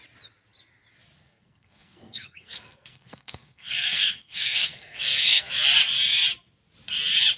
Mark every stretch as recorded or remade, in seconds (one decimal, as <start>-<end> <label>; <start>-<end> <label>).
0.0-1.2 recorded; 1.2-5.5 remade; 5.5-7.4 recorded